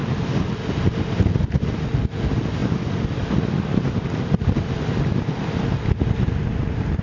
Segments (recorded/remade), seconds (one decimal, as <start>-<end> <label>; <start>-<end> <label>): 0.0-7.0 recorded